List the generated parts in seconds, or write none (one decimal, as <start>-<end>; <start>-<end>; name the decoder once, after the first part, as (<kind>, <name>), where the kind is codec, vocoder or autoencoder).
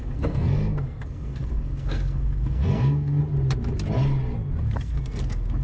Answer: 0.0-3.2 (codec, SNAC); 4.6-5.6